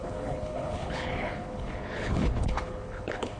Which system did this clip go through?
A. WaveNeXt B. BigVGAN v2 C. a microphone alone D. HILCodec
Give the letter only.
D